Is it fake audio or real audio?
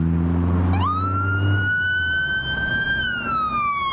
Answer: real